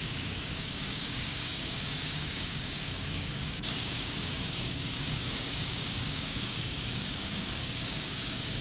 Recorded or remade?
remade